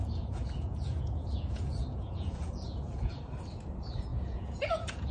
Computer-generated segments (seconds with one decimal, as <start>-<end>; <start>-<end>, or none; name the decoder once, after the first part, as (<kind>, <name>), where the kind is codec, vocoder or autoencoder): 0.0-3.1 (vocoder, Vocos); 4.1-5.1